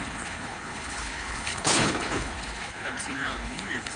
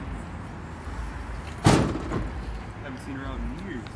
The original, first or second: second